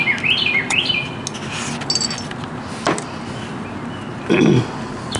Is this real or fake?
real